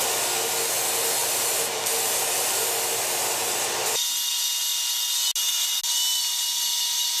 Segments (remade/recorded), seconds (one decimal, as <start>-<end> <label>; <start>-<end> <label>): 0.0-1.2 recorded; 1.2-2.7 remade; 2.7-7.2 recorded